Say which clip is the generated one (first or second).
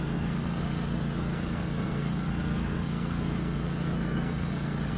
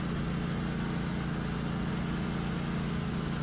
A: first